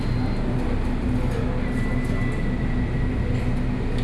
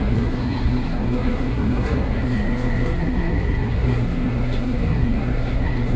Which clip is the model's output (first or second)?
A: second